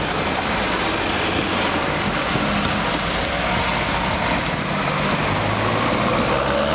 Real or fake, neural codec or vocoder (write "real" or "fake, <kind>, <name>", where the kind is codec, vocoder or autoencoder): real